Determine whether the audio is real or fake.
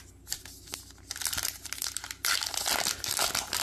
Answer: real